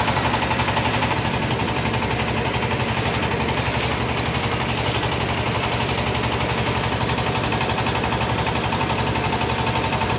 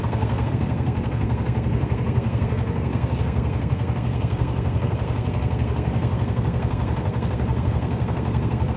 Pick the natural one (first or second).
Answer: first